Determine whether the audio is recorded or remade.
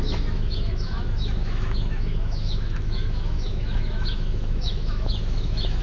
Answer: remade